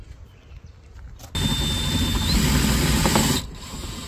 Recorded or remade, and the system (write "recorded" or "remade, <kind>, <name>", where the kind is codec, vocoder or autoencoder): recorded